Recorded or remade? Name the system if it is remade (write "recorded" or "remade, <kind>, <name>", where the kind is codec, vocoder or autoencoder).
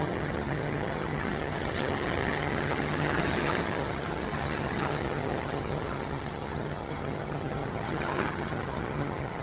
remade, vocoder, HiFi-GAN